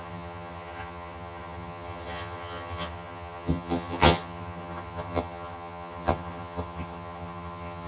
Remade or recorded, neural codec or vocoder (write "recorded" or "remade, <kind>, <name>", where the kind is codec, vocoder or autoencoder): remade, vocoder, HiFi-GAN